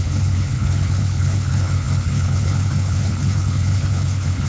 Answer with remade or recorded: remade